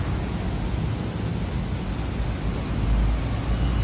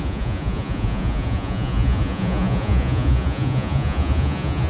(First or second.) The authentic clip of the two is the first